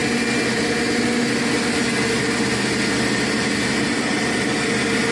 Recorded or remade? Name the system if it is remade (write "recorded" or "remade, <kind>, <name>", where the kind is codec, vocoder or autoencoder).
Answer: recorded